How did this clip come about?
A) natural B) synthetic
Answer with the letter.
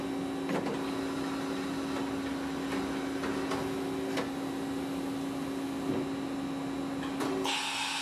A